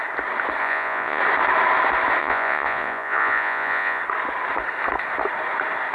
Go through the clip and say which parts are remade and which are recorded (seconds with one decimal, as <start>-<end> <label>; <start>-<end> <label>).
0.0-0.6 recorded; 0.6-1.2 remade; 1.2-2.2 recorded; 2.2-4.0 remade; 4.0-5.9 recorded